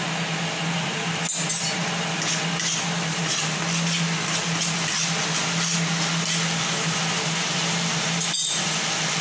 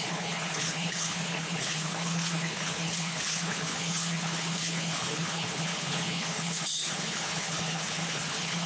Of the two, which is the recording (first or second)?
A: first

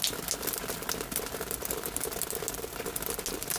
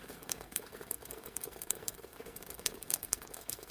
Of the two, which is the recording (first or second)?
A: first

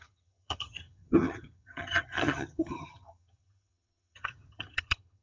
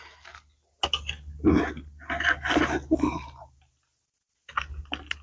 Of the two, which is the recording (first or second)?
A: second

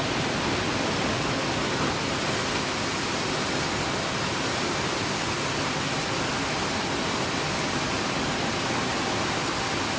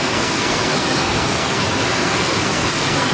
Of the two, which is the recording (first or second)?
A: first